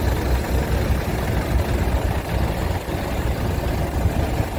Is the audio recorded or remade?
recorded